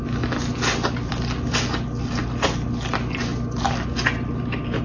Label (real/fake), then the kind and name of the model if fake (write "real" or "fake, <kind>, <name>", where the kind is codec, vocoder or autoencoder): real